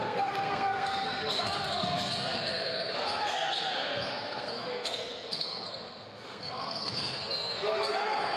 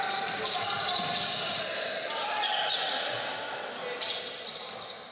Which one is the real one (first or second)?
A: second